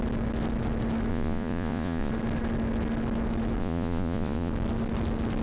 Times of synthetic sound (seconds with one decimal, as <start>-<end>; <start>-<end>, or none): 1.1-2.1; 3.6-4.5